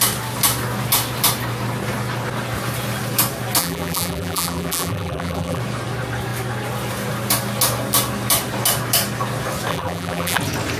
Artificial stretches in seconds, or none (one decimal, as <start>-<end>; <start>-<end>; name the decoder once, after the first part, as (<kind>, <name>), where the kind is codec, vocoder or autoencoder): 3.6-5.6 (vocoder, BigVGAN v2); 9.7-10.4